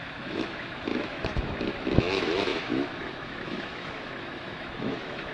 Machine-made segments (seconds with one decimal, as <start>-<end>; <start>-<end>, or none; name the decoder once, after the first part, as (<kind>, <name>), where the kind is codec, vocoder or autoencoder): 0.0-5.3 (autoencoder, DAC-VAE)